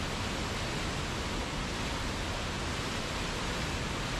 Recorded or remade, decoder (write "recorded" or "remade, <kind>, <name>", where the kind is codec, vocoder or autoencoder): recorded